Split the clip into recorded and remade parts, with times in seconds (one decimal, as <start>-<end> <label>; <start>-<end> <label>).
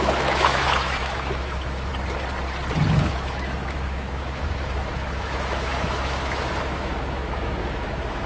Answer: 0.0-1.9 remade; 1.9-3.0 recorded; 3.0-8.3 remade